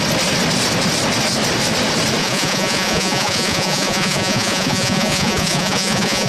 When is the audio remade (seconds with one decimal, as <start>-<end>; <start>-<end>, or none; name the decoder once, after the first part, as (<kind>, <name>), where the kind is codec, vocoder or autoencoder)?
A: 2.2-6.3 (vocoder, Vocos)